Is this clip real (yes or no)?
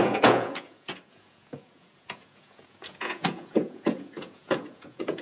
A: no